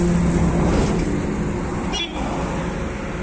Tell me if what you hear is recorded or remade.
recorded